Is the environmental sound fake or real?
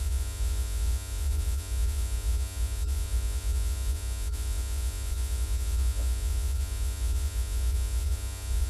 fake